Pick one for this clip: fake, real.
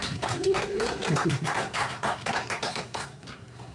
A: fake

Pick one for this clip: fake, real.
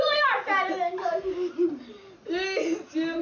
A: real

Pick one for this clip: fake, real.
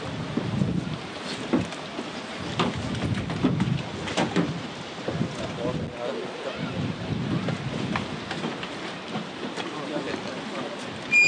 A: real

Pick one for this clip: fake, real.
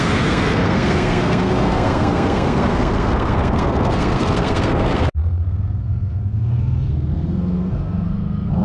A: fake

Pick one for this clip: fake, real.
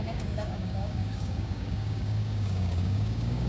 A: fake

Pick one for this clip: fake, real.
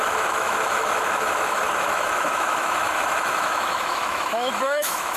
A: fake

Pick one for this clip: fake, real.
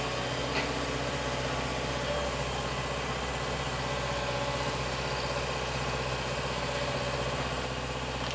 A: real